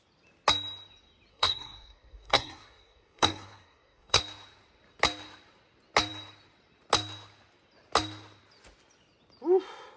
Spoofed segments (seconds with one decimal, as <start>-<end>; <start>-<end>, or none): 1.3-4.2

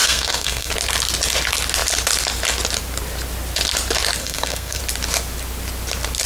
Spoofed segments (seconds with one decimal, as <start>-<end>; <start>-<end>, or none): 0.0-0.7; 4.2-4.8

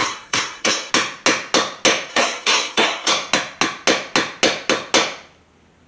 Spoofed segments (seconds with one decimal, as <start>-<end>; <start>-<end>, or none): 0.0-0.9; 2.1-3.1